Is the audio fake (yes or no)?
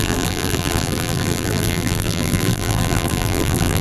yes